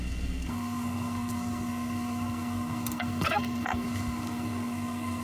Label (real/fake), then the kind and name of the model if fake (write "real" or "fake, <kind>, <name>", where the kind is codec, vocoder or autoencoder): fake, codec, SNAC